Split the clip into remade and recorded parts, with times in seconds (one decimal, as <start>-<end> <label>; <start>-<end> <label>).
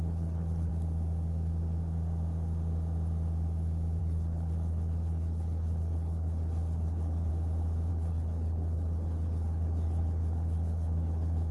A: 0.0-0.7 remade; 0.7-4.0 recorded; 4.0-7.3 remade; 7.3-7.9 recorded; 7.9-11.5 remade